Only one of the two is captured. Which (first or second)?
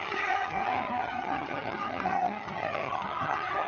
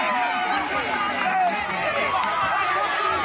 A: second